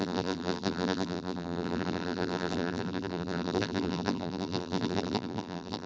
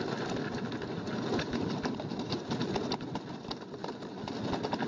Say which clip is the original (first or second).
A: second